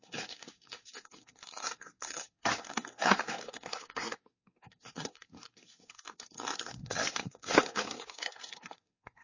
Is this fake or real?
fake